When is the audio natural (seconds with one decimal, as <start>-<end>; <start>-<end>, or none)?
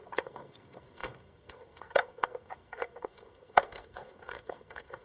none